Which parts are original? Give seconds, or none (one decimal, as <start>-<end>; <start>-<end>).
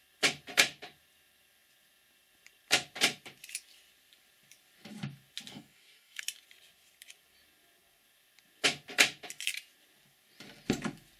0.0-5.5; 6.2-11.2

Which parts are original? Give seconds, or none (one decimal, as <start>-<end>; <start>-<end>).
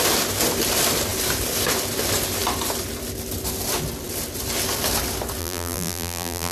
0.0-5.4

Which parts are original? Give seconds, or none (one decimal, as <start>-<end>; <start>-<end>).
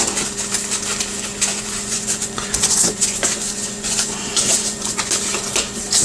0.0-1.5; 5.1-6.0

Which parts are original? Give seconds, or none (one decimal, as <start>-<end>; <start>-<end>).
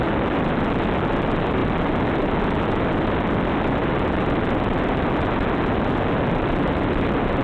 0.0-7.4